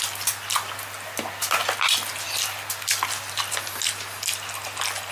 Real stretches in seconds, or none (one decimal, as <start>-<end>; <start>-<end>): 0.0-5.1